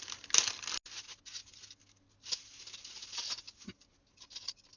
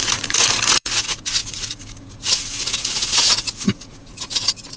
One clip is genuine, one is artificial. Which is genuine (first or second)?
first